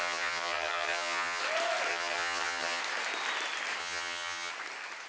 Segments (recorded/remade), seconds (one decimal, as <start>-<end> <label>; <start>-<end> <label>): 0.0-1.4 remade; 1.4-1.9 recorded; 1.9-2.8 remade; 2.8-3.8 recorded; 3.8-4.5 remade; 4.5-5.1 recorded